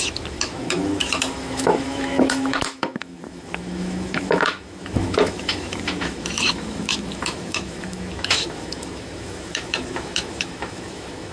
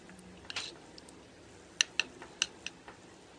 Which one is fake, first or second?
first